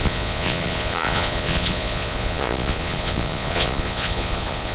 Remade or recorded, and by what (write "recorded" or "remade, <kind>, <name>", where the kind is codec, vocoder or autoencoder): remade, vocoder, Vocos